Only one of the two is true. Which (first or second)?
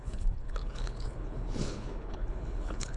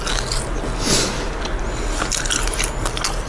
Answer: second